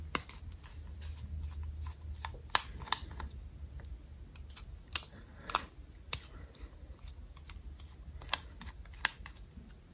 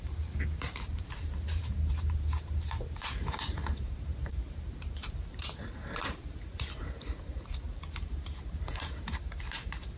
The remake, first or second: second